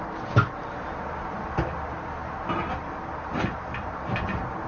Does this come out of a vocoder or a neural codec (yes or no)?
no